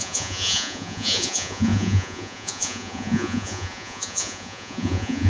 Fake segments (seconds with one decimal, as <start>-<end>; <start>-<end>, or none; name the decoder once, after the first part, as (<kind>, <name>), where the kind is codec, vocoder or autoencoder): 0.0-5.3 (vocoder, Vocos)